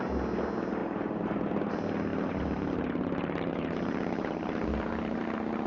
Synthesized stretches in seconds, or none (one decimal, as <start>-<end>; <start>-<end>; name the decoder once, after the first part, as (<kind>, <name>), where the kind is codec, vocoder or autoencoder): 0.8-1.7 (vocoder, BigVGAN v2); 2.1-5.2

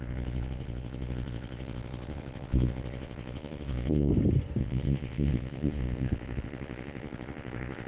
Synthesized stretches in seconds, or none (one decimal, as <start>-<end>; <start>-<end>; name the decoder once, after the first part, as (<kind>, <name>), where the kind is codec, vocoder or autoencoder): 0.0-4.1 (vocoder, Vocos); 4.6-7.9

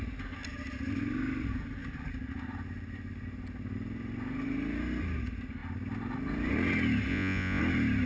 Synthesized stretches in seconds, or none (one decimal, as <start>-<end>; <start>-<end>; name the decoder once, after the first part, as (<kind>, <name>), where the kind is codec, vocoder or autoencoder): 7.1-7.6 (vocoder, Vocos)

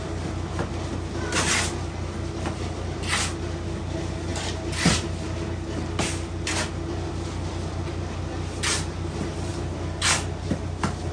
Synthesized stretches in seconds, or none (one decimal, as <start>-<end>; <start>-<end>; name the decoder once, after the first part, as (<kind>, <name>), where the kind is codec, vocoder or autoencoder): none

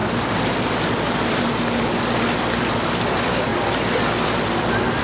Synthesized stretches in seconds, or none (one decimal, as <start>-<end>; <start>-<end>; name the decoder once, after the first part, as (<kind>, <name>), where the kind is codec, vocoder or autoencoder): 0.0-3.0 (vocoder, BigVGAN v2)

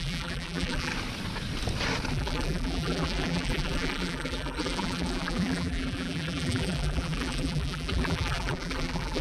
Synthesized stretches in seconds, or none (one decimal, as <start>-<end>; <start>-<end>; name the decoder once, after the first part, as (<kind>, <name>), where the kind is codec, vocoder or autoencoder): 0.0-0.9 (vocoder, BigVGAN v2); 2.1-9.2

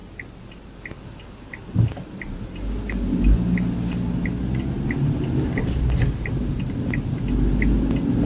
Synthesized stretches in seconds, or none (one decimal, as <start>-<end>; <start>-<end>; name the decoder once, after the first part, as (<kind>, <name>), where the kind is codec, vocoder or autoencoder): none